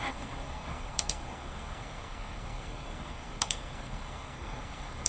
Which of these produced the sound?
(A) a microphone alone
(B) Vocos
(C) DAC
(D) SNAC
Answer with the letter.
D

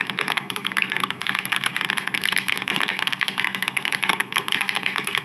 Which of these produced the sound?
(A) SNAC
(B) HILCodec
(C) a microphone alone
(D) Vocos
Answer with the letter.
A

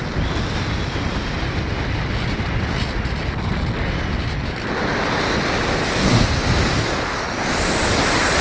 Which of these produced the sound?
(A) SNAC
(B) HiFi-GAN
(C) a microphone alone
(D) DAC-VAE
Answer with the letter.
C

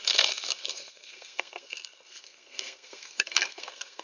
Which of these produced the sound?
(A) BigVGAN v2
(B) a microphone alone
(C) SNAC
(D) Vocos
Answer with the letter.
C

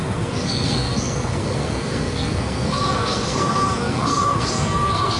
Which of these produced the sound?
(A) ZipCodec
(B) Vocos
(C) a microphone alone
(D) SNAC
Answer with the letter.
D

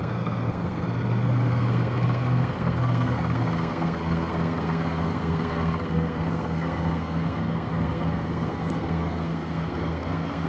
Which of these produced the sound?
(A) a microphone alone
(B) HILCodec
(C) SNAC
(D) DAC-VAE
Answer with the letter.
C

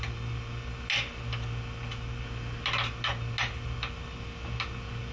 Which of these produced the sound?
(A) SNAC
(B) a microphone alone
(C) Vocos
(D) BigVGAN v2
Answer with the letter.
B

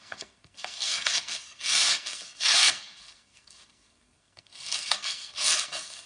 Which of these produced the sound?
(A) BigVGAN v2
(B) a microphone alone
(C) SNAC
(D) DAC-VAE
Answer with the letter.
C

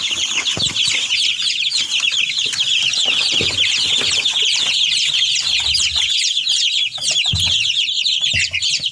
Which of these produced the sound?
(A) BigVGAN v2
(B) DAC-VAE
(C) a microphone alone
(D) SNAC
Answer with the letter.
C